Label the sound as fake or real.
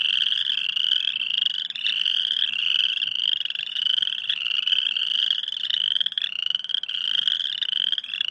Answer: real